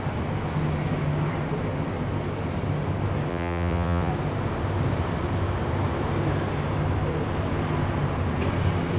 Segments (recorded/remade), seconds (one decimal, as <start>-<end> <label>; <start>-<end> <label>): 0.0-3.3 recorded; 3.3-4.1 remade; 4.1-9.0 recorded